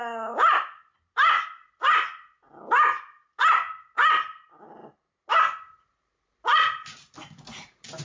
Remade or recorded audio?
recorded